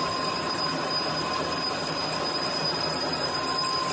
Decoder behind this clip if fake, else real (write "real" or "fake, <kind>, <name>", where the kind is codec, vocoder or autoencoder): real